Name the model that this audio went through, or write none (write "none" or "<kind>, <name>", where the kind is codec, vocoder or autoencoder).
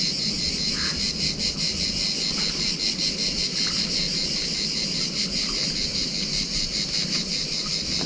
none